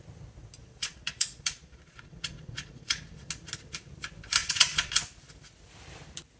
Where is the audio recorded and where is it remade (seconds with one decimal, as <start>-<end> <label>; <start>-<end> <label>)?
0.0-0.6 recorded; 0.6-3.0 remade; 3.0-4.4 recorded; 4.4-4.9 remade; 4.9-6.4 recorded

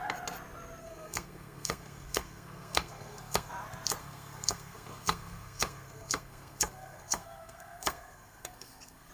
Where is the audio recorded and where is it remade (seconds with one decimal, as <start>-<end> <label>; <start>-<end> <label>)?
0.0-0.8 recorded; 0.8-3.5 remade; 3.5-4.0 recorded; 4.0-9.1 remade

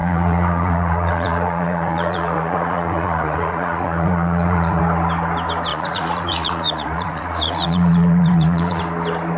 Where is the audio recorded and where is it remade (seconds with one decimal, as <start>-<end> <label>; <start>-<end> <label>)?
0.0-4.8 remade; 4.8-5.7 recorded; 5.7-8.8 remade; 8.8-9.4 recorded

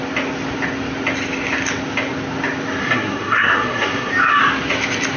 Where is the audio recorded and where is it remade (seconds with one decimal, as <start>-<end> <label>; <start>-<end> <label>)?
0.0-2.8 recorded; 2.8-4.1 remade; 4.1-5.2 recorded